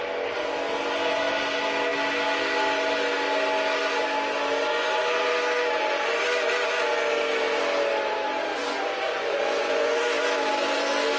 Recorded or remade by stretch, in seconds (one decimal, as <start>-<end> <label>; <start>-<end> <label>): 0.0-8.5 recorded; 8.5-10.0 remade; 10.0-11.2 recorded